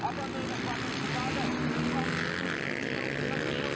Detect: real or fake real